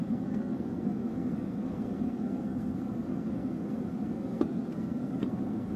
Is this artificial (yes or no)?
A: yes